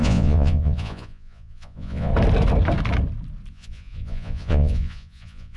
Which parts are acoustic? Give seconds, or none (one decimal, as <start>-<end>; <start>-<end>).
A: 2.1-3.5